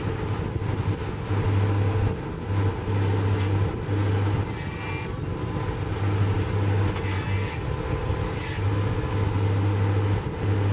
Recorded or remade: recorded